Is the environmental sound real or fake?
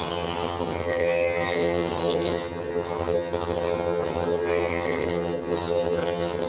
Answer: fake